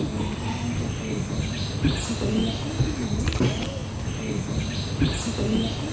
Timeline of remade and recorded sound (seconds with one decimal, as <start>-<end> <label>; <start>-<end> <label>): 0.0-5.9 recorded